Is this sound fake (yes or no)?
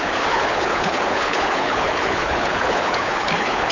yes